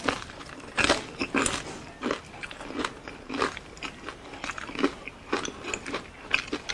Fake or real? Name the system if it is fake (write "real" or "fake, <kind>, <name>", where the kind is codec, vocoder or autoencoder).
real